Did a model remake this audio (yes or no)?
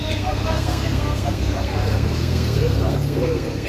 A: yes